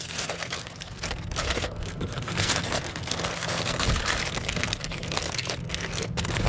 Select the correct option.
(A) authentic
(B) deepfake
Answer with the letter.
B